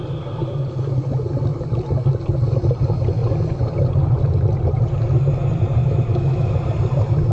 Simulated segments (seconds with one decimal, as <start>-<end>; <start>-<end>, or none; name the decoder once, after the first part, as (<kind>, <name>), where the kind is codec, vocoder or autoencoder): 5.8-6.5 (autoencoder, DAC-VAE)